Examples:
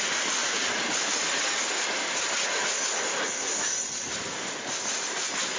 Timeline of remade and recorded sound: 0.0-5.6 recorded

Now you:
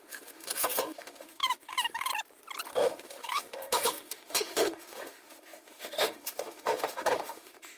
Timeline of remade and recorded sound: 0.0-2.1 remade; 2.1-2.7 recorded; 2.7-7.8 remade

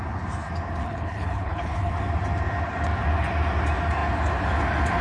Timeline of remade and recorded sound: 0.0-0.8 recorded; 0.8-1.9 remade; 1.9-5.0 recorded

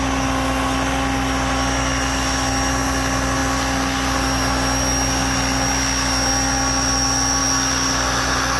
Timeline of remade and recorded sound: 0.0-8.6 recorded

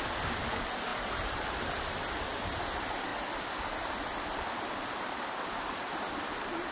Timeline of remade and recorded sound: 0.0-0.9 recorded; 0.9-2.2 remade; 2.2-6.7 recorded

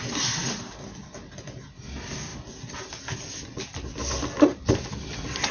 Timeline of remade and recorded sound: 0.0-5.5 recorded

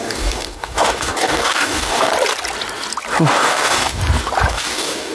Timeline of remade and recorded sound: 0.0-2.1 remade; 2.1-3.3 recorded; 3.3-4.0 remade; 4.0-4.5 recorded; 4.5-5.1 remade